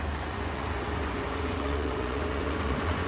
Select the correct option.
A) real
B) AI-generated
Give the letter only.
B